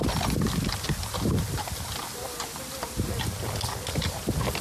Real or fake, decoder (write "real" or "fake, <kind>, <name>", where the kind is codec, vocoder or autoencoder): real